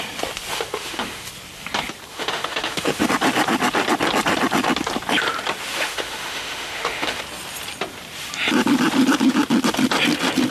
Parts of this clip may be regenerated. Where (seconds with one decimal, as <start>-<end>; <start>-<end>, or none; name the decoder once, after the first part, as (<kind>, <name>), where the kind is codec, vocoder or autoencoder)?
0.5-1.3 (autoencoder, DAC-VAE); 2.1-3.1; 5.7-7.2